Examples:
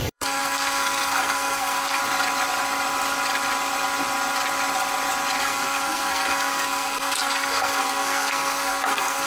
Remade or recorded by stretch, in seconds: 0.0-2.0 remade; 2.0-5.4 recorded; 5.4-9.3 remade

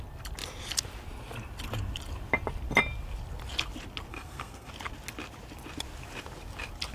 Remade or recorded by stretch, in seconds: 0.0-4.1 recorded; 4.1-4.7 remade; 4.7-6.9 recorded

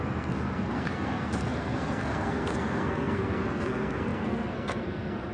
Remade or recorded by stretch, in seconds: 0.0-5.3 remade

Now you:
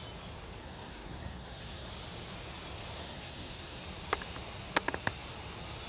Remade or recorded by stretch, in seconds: 0.0-0.6 recorded; 0.6-1.9 remade; 1.9-3.0 recorded; 3.0-3.8 remade; 3.8-5.9 recorded

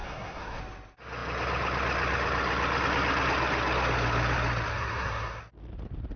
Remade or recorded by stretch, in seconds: 0.0-0.6 remade; 0.6-4.7 recorded; 4.7-5.4 remade; 5.4-6.2 recorded

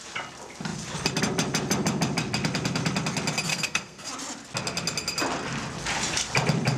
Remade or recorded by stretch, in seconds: 0.0-3.5 recorded; 3.5-4.1 remade; 4.1-6.8 recorded

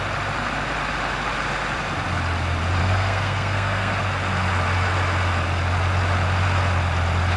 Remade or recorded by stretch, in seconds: 0.0-2.8 recorded; 2.8-4.0 remade; 4.0-7.4 recorded

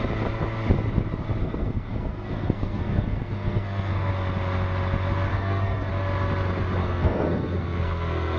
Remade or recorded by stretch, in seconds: 0.0-1.4 recorded; 1.4-4.1 remade; 4.1-5.3 recorded; 5.3-5.9 remade; 5.9-6.8 recorded; 6.8-8.4 remade